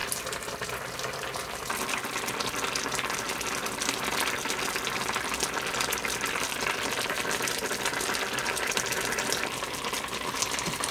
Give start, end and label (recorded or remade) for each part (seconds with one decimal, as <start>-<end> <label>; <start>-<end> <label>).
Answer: 0.0-10.9 recorded